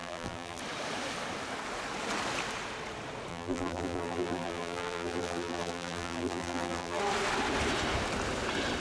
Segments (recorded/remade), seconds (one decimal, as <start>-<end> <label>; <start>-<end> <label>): 0.0-0.6 remade; 0.6-3.3 recorded; 3.3-7.0 remade; 7.0-8.8 recorded